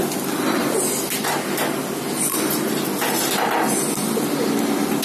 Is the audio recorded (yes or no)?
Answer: yes